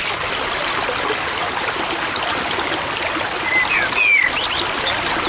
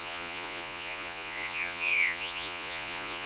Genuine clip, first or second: first